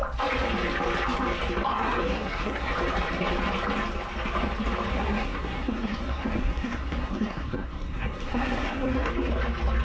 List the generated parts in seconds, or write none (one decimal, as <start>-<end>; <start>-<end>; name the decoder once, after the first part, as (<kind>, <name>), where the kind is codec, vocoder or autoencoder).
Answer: 1.7-2.7 (codec, SNAC); 4.9-9.1